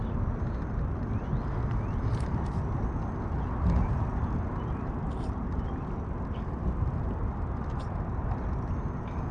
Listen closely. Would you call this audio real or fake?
real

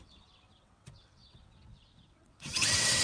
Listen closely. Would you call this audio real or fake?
fake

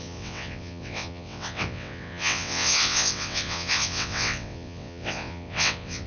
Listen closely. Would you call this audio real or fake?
fake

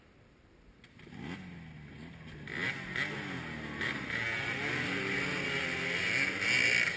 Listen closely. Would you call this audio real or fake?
real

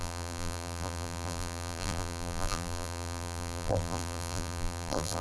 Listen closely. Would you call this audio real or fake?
fake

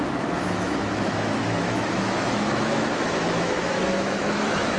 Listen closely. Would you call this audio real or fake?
fake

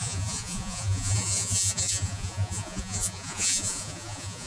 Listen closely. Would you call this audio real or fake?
fake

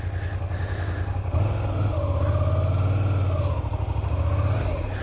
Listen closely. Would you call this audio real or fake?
real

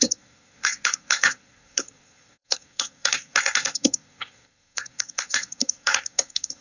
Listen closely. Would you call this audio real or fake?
fake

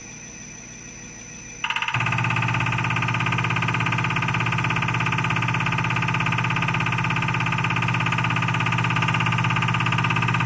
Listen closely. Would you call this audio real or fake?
real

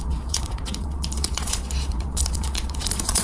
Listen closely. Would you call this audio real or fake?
fake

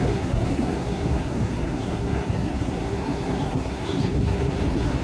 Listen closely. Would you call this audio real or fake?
fake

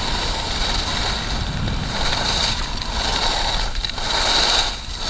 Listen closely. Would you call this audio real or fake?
real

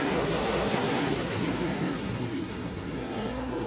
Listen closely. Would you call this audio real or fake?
fake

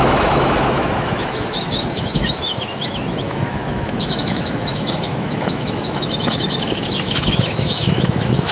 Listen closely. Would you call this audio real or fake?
fake